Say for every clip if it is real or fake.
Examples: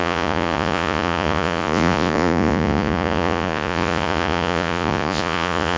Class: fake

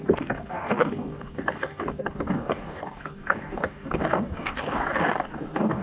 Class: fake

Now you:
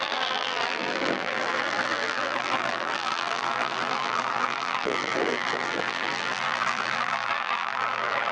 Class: fake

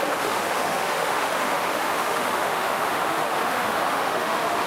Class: fake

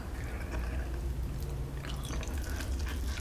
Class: real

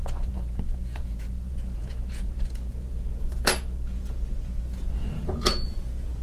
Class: fake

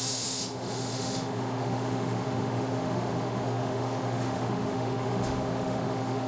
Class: fake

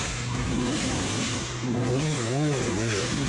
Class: fake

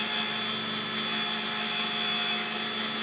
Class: real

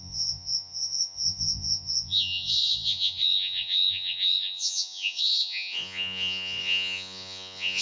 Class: fake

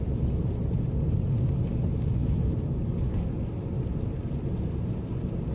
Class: real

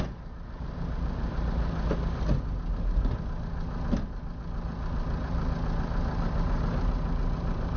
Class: real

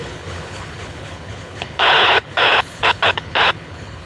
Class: fake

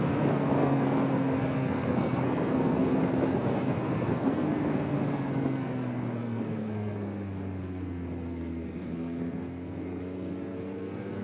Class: fake